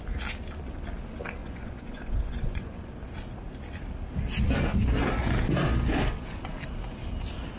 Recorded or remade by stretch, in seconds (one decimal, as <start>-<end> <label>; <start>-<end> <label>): 0.0-1.4 recorded; 1.4-2.9 remade; 2.9-7.6 recorded